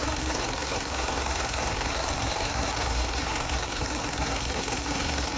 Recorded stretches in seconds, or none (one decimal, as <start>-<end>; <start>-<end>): none

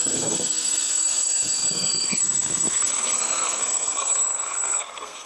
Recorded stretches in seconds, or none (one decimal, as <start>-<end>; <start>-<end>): none

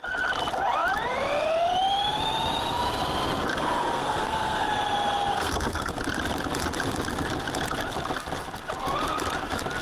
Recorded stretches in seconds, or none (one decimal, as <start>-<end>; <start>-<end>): 0.0-3.5; 4.7-5.3; 6.0-9.8

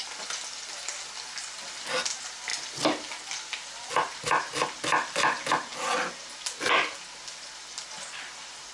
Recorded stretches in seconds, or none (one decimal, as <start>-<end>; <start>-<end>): 0.0-8.7

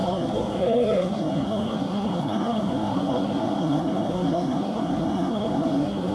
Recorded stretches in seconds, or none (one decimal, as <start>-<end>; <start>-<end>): none

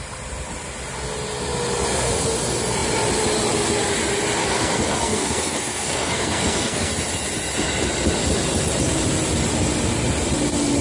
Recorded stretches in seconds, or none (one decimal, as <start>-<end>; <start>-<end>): 0.0-4.4; 6.9-10.8

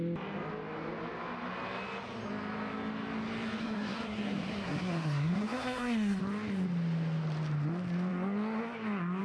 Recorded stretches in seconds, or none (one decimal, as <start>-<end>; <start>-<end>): 0.0-3.6; 6.2-9.2